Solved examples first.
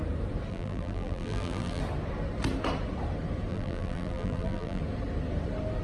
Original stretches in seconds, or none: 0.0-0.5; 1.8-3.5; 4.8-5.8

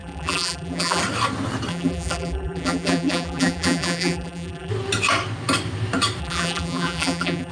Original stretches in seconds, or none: 1.0-1.7; 4.7-6.2

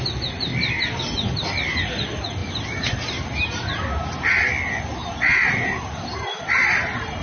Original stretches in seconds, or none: 0.0-7.2

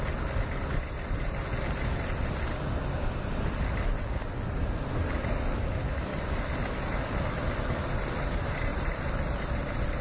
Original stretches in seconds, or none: 0.0-8.7; 9.3-10.0

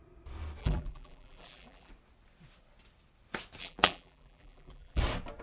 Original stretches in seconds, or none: 0.0-0.6; 1.9-3.6; 5.0-5.4